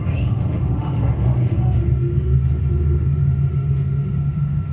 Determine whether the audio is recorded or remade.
remade